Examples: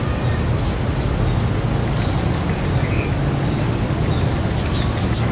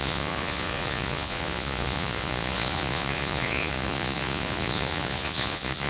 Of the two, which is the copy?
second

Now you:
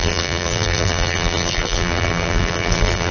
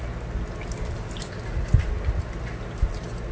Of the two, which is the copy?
first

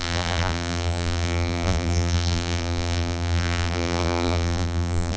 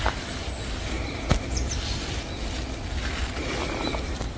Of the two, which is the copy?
first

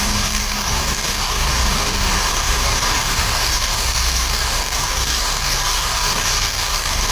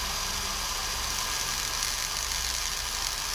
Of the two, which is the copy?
first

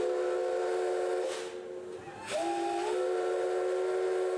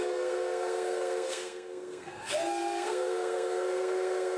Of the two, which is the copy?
second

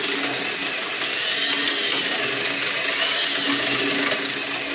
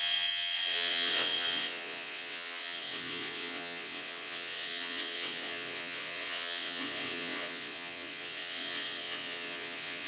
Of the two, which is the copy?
second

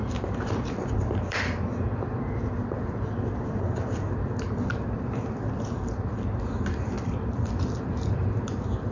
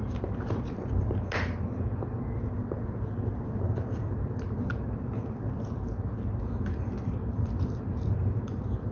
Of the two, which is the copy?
first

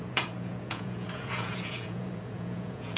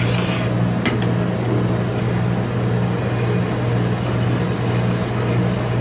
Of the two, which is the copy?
first